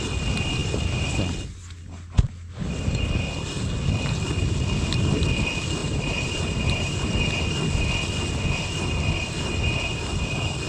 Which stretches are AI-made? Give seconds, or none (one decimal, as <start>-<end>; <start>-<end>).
5.8-7.1